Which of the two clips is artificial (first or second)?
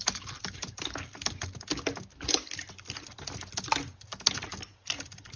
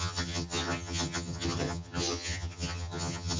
second